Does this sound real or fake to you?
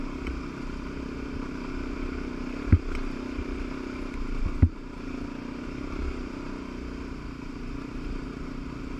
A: real